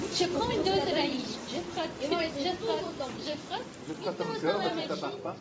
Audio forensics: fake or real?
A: fake